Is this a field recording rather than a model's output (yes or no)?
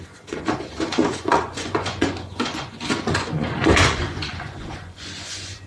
no